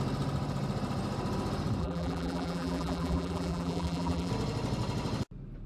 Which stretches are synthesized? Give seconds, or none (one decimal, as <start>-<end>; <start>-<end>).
1.8-4.3